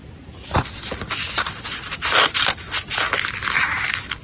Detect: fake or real real